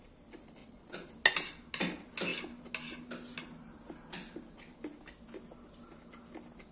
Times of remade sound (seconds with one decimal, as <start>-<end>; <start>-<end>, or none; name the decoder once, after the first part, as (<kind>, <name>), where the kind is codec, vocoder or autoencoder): 0.6-1.1 (vocoder, Vocos)